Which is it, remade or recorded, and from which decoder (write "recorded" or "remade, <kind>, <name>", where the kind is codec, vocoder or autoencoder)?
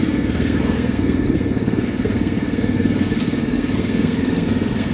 remade, codec, SNAC